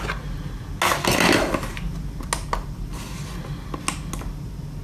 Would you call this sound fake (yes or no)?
no